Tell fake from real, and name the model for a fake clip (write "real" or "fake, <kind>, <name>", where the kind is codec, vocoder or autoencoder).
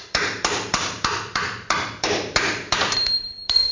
fake, vocoder, BigVGAN v2